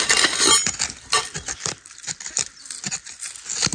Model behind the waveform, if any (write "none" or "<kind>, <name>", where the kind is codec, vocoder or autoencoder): none